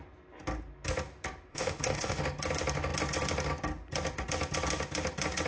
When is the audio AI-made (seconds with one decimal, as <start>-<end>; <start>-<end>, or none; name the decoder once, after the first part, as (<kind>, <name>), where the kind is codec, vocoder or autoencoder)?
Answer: 1.5-2.2 (autoencoder, DAC-VAE)